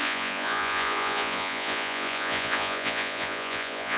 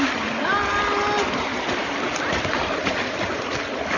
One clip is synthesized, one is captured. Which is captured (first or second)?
second